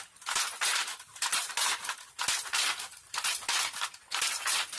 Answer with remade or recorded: recorded